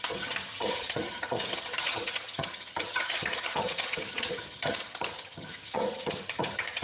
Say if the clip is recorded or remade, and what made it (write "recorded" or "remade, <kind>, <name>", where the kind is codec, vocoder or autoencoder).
remade, vocoder, HiFi-GAN